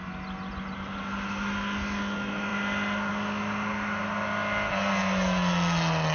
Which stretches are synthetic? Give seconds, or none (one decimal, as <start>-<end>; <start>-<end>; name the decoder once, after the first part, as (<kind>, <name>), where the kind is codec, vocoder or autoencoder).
none